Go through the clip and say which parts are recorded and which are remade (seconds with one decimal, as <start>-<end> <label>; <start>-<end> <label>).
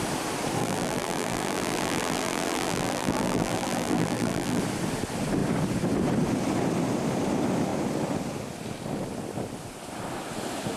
0.0-0.6 recorded; 0.6-4.6 remade; 4.6-10.8 recorded